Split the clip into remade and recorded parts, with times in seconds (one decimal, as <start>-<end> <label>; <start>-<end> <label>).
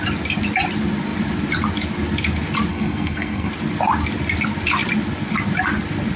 0.0-2.7 recorded; 2.7-3.5 remade; 3.5-6.2 recorded